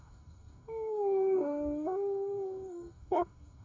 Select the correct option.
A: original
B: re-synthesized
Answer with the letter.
B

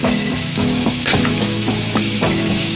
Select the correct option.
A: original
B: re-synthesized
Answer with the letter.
B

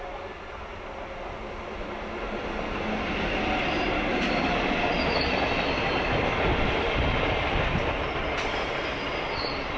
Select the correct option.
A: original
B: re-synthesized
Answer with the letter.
A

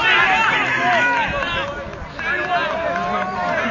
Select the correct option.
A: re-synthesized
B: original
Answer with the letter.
B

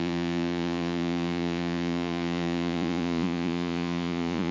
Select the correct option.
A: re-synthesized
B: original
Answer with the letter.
A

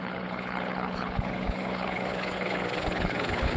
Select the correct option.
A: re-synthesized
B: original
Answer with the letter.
A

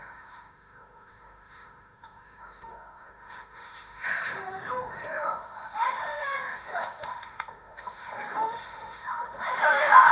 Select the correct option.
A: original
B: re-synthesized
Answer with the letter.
B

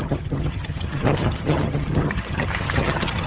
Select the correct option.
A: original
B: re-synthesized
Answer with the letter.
B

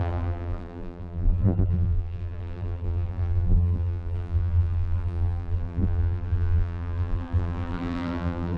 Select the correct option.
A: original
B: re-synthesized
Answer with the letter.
B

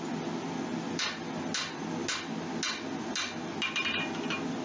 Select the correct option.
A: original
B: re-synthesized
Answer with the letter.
A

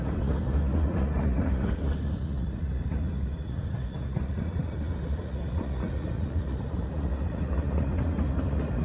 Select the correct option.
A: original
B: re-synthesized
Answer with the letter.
B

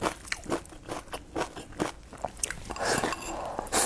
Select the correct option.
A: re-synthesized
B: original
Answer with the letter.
B